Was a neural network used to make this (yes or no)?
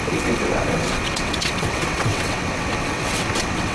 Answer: yes